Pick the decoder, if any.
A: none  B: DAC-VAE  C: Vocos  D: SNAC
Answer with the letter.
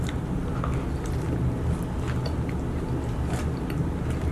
A